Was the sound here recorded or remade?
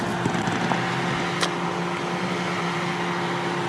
recorded